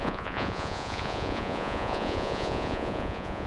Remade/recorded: remade